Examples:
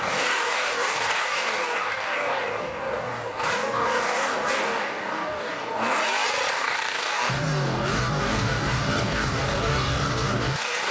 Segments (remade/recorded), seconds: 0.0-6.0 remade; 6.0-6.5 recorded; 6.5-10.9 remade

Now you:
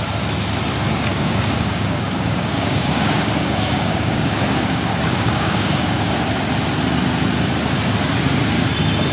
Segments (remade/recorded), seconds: 0.0-1.1 recorded; 1.1-6.1 remade; 6.1-9.1 recorded

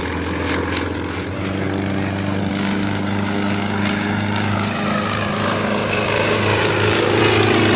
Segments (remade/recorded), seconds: 0.0-2.5 recorded; 2.5-7.2 remade; 7.2-7.8 recorded